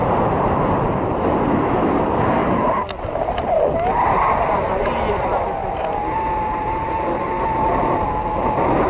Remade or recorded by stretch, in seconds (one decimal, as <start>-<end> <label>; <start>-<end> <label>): 0.0-8.9 recorded